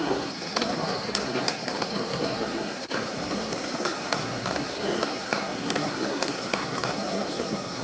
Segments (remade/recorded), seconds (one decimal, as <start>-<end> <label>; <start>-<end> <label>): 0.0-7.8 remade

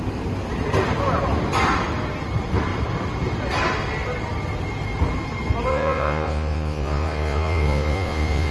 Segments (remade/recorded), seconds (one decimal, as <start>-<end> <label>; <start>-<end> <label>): 0.0-5.7 recorded; 5.7-8.5 remade

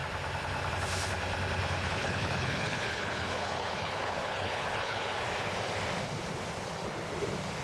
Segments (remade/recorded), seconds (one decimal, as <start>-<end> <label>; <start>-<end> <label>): 0.0-1.8 recorded; 1.8-5.2 remade; 5.2-7.6 recorded

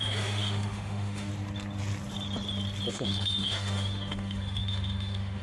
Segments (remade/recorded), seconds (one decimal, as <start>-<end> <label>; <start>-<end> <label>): 0.0-1.3 remade; 1.3-2.9 recorded; 2.9-5.4 remade

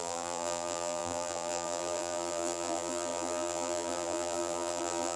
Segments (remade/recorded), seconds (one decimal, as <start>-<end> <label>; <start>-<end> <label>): 0.0-5.2 remade

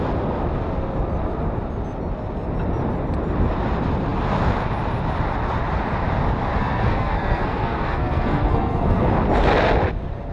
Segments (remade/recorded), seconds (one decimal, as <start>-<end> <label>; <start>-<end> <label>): 0.0-6.6 recorded; 6.6-9.1 remade; 9.1-10.3 recorded

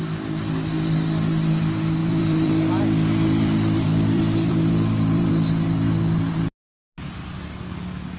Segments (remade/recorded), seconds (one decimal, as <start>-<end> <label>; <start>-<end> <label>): 0.0-2.0 recorded; 2.0-5.3 remade; 5.3-8.2 recorded